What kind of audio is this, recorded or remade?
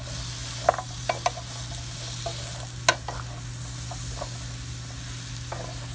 recorded